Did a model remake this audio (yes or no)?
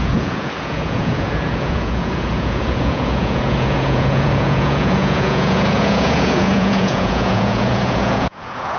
yes